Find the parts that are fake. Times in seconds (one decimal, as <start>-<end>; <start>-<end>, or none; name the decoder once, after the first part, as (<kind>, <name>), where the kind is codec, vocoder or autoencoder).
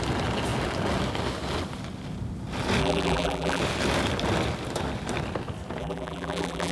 2.8-3.6 (vocoder, BigVGAN v2); 5.8-6.7